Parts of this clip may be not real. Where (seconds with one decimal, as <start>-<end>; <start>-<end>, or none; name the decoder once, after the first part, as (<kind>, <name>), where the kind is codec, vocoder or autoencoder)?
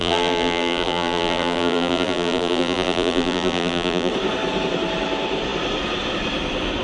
0.0-4.1 (vocoder, BigVGAN v2)